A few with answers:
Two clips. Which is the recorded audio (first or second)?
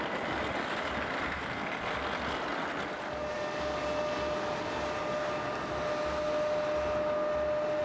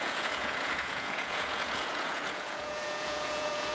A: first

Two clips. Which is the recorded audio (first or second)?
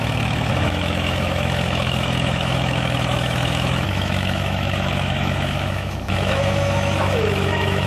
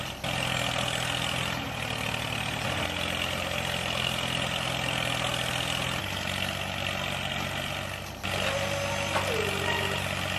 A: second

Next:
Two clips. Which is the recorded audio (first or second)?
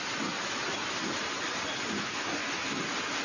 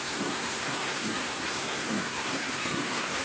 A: first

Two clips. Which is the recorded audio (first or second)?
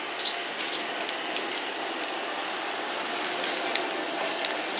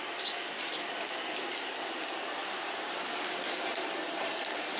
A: first